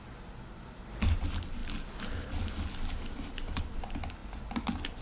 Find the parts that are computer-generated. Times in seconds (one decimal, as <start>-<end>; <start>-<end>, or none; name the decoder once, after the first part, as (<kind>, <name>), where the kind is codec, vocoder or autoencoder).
none